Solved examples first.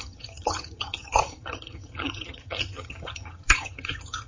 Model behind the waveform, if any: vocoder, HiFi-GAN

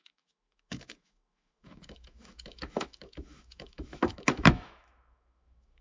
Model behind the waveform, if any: autoencoder, DAC-VAE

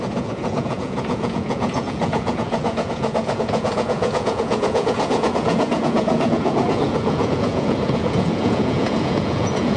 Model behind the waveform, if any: vocoder, Vocos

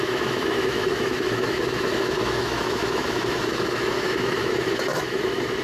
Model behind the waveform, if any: autoencoder, DAC-VAE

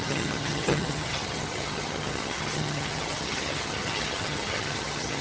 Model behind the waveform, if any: vocoder, HiFi-GAN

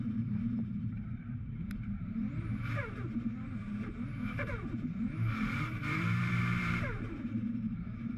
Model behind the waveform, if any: vocoder, BigVGAN v2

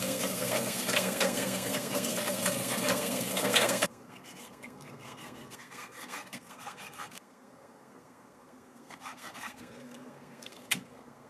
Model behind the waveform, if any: codec, SNAC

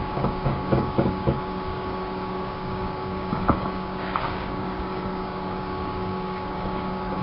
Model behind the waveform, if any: codec, DAC